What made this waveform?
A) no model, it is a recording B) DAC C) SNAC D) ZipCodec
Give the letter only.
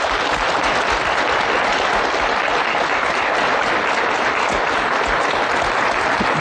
A